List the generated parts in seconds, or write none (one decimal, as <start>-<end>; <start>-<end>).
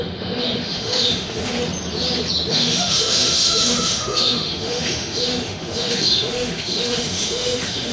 0.0-1.6; 2.5-7.9